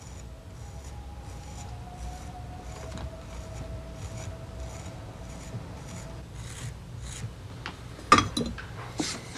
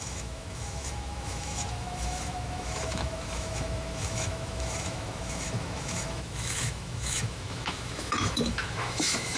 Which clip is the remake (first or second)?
second